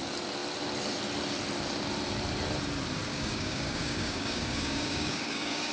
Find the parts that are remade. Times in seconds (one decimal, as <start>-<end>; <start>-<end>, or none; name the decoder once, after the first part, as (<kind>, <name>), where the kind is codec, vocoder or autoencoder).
3.1-5.7 (codec, DAC)